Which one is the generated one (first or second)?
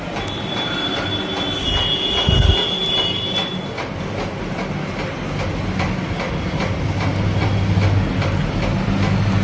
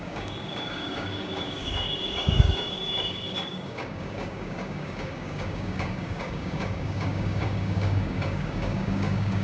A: second